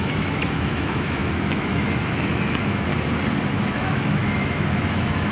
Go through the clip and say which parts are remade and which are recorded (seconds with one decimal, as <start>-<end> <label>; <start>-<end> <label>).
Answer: 0.0-2.9 remade; 2.9-3.5 recorded; 3.5-5.3 remade